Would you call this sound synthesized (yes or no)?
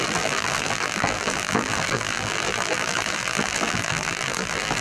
yes